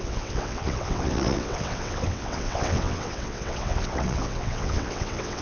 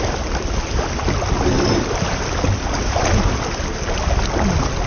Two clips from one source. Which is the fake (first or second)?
first